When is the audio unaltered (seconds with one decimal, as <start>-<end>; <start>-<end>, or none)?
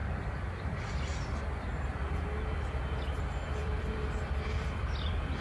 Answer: 0.0-3.2